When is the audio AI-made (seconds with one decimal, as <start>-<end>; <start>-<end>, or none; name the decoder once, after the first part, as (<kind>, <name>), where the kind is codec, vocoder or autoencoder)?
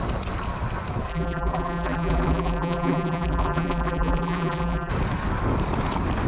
1.1-4.9 (vocoder, BigVGAN v2)